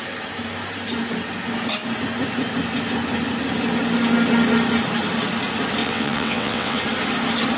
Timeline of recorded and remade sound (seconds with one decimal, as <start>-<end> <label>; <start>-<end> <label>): 0.0-5.8 recorded; 5.8-6.8 remade; 6.8-7.6 recorded